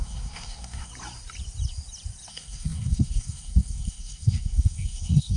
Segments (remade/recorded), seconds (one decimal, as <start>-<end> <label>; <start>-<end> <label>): 0.0-0.9 remade; 0.9-2.3 recorded; 2.3-5.4 remade